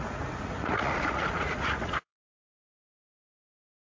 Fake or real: fake